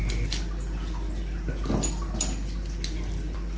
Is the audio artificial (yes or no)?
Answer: no